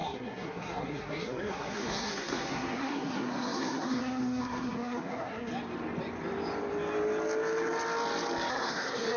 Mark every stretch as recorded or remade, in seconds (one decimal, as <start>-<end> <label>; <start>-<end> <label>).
0.0-5.5 remade; 5.5-8.5 recorded; 8.5-9.2 remade